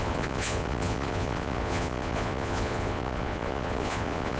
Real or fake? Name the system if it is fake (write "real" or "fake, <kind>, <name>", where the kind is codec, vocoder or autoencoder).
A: fake, vocoder, Vocos